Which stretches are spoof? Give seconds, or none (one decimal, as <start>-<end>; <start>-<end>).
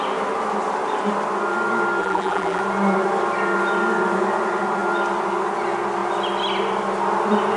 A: 2.0-2.6